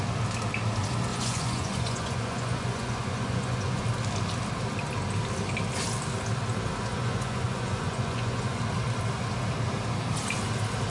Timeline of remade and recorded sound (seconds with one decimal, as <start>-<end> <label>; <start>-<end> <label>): 0.0-1.1 recorded; 1.1-3.8 remade; 3.8-6.9 recorded; 6.9-8.6 remade; 8.6-10.9 recorded